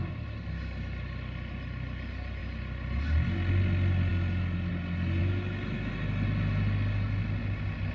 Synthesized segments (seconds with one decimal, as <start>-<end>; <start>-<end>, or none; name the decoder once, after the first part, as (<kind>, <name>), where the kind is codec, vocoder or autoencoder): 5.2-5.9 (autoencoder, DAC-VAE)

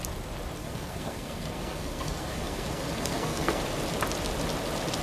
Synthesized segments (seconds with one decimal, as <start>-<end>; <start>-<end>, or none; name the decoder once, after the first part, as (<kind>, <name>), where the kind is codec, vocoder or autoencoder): 0.6-3.6 (codec, SNAC)

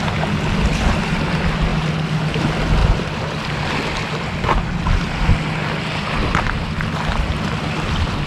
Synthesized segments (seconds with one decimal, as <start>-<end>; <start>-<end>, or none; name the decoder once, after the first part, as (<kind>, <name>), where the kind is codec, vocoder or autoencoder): none

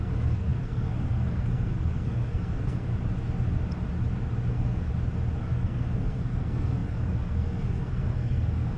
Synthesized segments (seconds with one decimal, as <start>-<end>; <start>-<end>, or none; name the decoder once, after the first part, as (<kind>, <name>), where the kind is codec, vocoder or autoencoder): 0.0-2.9 (codec, SNAC); 4.5-4.9; 5.4-8.8

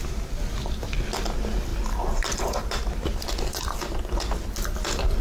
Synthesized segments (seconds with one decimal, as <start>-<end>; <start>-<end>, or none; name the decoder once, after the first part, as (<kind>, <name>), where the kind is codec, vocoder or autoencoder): none

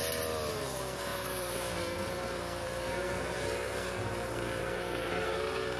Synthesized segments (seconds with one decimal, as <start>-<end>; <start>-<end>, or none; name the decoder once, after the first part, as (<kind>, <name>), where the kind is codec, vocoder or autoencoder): 0.5-5.8 (codec, SNAC)

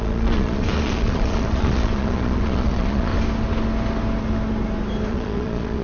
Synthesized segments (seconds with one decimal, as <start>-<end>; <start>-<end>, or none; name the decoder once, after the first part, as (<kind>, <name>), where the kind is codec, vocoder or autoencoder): 0.0-3.1 (vocoder, Vocos); 5.1-5.8